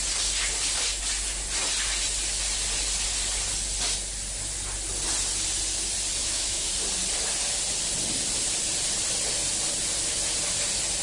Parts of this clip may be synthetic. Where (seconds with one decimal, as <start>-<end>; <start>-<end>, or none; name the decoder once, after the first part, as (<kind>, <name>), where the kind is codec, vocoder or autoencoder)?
6.2-6.7 (autoencoder, DAC-VAE)